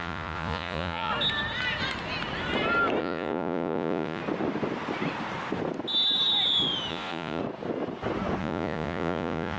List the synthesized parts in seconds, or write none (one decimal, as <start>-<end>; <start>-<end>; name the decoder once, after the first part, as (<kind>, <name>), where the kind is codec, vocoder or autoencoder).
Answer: 0.0-1.1 (vocoder, Vocos); 3.0-4.2; 6.9-7.4; 8.4-9.6